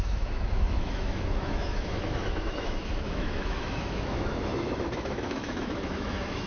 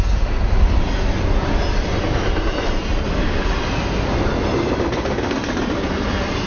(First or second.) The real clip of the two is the second